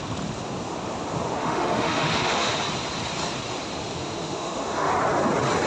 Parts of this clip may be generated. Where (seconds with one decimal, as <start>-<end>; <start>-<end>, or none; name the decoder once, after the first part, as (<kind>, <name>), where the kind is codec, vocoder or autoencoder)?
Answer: 1.4-2.5 (autoencoder, DAC-VAE); 4.0-4.9